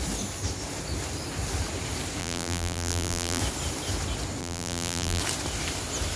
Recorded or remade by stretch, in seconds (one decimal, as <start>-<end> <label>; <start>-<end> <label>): 0.0-2.2 recorded; 2.2-3.4 remade; 3.4-4.4 recorded; 4.4-5.2 remade; 5.2-6.2 recorded